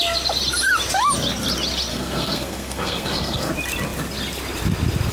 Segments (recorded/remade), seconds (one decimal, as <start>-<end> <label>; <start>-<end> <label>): 0.0-1.9 recorded; 1.9-3.5 remade; 3.5-5.1 recorded